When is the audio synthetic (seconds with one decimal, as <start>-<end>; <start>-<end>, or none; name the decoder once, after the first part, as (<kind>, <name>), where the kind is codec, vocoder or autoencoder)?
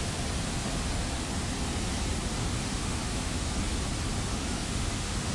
2.4-3.5 (autoencoder, DAC-VAE); 4.3-5.3